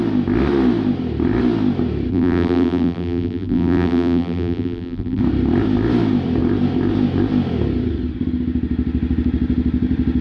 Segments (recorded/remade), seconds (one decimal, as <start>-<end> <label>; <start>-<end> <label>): 0.0-2.1 recorded; 2.1-5.2 remade; 5.2-10.2 recorded